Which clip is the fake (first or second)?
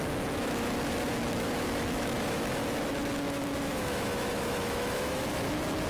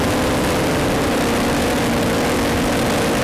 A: first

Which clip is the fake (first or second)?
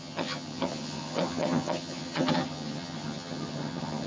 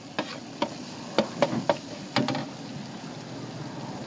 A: first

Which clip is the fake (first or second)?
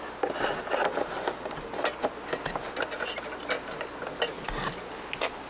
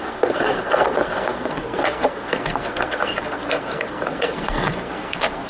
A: second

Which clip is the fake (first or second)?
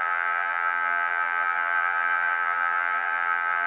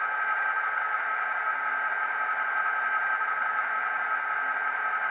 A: first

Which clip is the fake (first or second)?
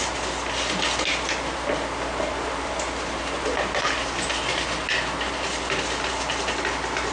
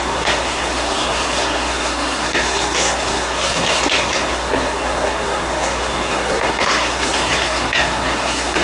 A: second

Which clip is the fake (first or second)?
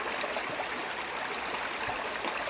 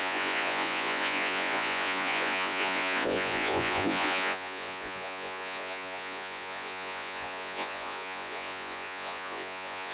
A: second